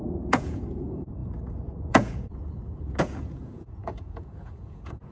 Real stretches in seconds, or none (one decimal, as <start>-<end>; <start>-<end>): none